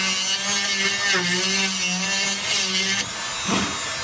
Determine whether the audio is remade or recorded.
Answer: recorded